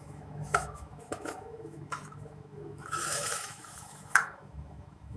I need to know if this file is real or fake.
fake